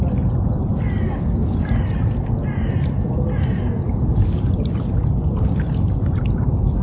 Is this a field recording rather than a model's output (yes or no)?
yes